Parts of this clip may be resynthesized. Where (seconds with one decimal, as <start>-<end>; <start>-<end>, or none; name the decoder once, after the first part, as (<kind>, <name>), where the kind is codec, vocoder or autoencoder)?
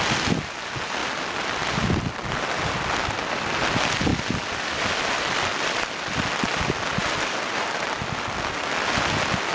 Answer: none